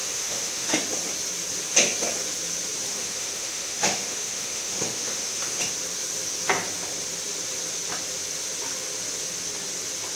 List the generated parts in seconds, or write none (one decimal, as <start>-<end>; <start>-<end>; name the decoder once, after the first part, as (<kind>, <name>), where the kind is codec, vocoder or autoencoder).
0.0-0.8 (autoencoder, DAC-VAE); 2.9-5.7